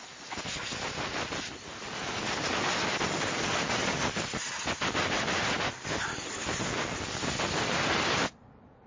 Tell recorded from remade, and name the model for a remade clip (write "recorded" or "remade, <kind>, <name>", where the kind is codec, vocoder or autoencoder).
recorded